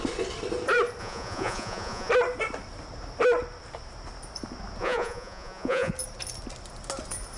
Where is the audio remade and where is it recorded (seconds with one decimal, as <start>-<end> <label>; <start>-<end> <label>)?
0.0-1.0 recorded; 1.0-2.1 remade; 2.1-4.8 recorded; 4.8-5.9 remade; 5.9-7.4 recorded